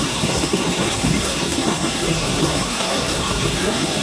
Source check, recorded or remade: remade